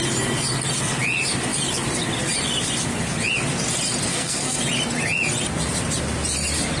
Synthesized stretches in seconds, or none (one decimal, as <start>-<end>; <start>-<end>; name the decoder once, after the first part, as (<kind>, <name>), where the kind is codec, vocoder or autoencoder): 4.1-4.6 (codec, SNAC)